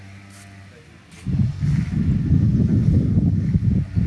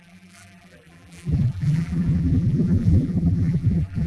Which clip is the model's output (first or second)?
second